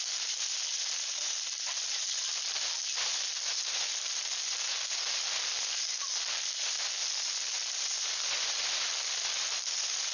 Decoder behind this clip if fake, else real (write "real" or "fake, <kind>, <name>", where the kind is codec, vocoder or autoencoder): real